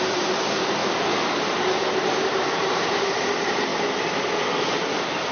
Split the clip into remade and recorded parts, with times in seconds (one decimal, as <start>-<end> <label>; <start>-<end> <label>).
0.0-0.8 remade; 0.8-2.2 recorded; 2.2-3.7 remade; 3.7-4.7 recorded; 4.7-5.3 remade